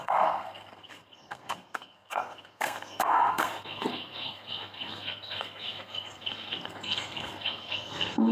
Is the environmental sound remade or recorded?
remade